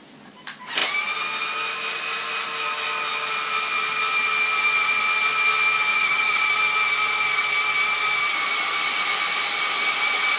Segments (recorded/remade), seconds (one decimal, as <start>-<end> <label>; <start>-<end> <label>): 0.0-5.9 recorded; 5.9-6.5 remade; 6.5-10.4 recorded